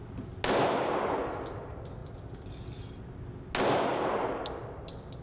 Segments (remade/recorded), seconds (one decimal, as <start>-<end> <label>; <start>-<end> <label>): 0.0-5.2 recorded